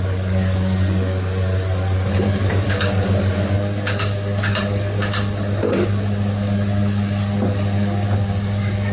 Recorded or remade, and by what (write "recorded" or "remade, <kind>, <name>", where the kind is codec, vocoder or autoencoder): remade, codec, DAC